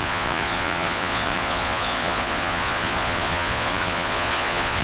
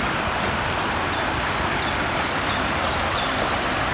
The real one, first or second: second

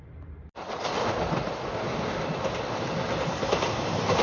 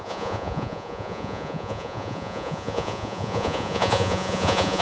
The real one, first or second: first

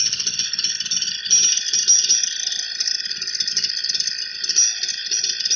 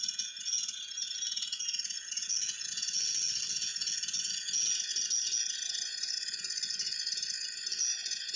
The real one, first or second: first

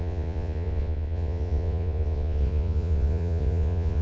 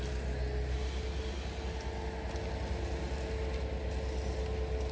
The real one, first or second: second